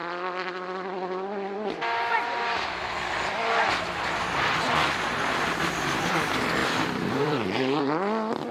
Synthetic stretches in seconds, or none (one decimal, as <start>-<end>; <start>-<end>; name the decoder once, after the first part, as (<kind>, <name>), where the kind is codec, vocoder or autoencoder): 6.6-7.8 (vocoder, BigVGAN v2)